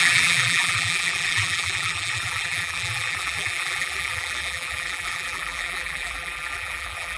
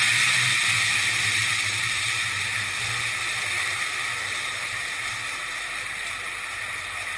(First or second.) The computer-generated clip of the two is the first